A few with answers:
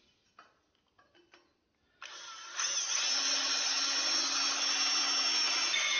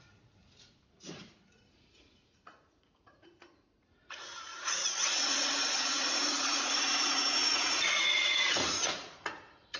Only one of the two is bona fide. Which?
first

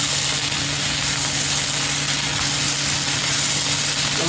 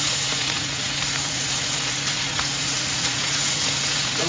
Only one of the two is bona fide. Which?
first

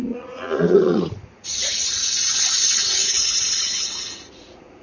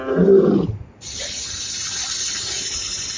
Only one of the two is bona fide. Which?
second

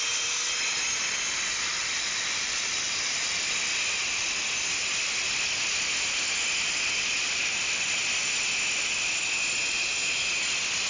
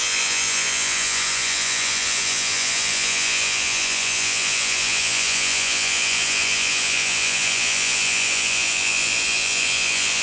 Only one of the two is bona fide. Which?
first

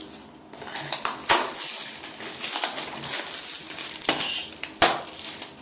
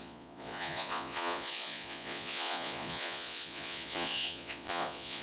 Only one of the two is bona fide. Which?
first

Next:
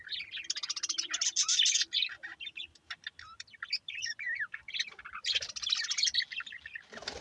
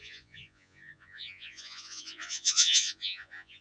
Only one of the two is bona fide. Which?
first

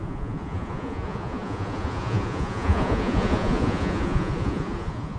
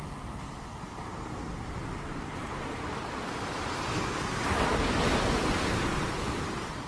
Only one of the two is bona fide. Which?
second